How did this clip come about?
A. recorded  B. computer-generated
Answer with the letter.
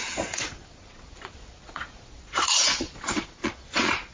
B